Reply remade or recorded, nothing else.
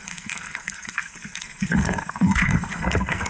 remade